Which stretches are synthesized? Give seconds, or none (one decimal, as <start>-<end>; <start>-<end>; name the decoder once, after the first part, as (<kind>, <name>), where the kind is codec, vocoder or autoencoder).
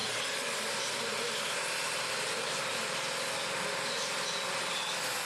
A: 0.0-2.6 (vocoder, BigVGAN v2)